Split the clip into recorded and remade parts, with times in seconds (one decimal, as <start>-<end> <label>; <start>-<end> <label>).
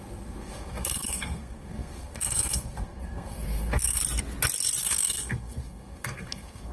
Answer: 0.0-4.0 remade; 4.0-4.8 recorded; 4.8-6.7 remade